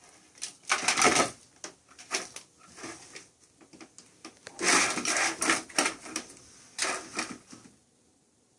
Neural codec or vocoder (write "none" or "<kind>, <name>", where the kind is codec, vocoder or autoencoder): none